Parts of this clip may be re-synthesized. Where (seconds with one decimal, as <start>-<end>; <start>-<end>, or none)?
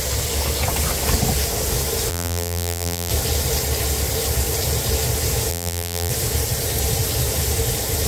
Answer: 2.1-3.1; 5.5-6.1